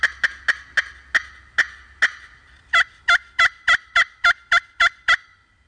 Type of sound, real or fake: real